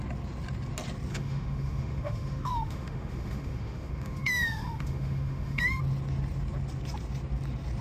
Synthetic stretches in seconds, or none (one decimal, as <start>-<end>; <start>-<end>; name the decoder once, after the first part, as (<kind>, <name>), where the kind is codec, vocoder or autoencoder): 1.1-5.8 (autoencoder, DAC-VAE)